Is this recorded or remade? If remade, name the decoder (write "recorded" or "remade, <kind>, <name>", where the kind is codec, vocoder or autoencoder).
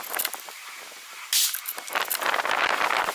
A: recorded